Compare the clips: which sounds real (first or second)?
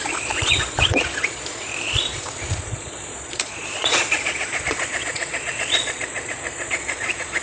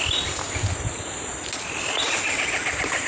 second